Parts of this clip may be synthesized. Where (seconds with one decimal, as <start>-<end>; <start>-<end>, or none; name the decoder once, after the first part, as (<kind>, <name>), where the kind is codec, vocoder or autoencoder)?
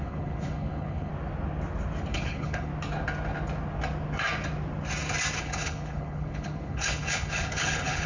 0.0-1.1 (codec, HILCodec); 2.1-2.7; 5.4-8.1